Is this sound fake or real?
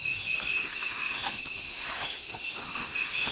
fake